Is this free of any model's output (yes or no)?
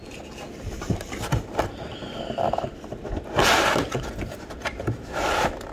no